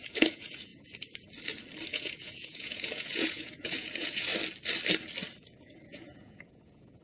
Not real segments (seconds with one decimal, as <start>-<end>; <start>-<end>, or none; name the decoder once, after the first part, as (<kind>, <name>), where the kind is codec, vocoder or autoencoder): 0.0-0.7 (vocoder, Vocos); 1.9-4.3; 5.6-7.0